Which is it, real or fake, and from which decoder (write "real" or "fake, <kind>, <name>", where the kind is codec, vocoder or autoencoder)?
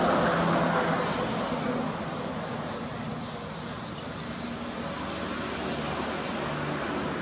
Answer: real